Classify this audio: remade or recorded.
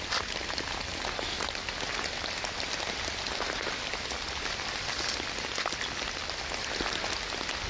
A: recorded